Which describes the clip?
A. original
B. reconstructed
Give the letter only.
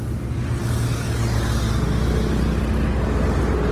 A